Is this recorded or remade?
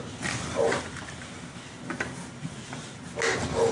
recorded